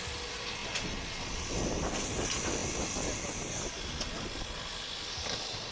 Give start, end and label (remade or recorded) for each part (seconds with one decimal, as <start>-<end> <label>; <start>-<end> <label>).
0.0-5.7 recorded